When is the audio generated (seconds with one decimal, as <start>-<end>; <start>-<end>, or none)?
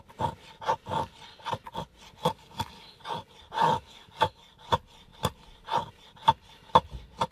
2.2-3.0; 3.6-4.4